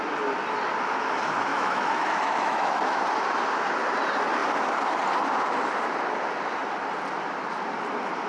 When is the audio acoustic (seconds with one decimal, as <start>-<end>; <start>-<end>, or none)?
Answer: 0.0-1.5; 3.0-8.3